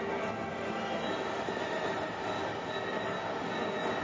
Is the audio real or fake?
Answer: real